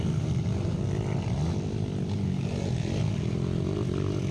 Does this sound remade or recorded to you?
recorded